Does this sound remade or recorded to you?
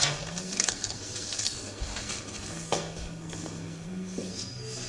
remade